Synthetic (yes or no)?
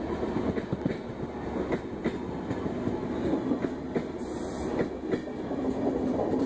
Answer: no